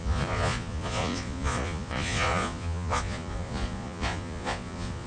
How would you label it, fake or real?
fake